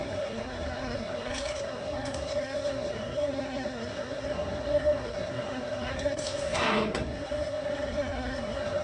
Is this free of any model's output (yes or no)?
no